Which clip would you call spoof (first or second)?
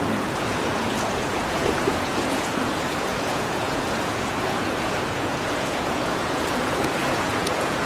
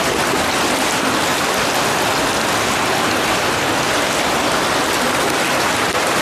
first